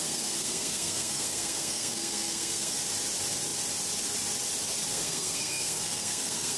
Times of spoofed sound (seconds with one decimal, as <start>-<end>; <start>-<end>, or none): 0.0-2.8; 4.9-6.6